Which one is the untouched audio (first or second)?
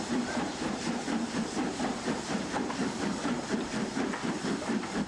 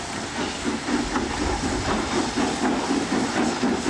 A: second